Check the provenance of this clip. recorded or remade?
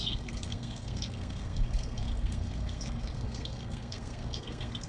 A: remade